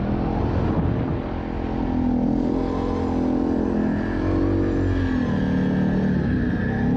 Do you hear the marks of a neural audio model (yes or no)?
no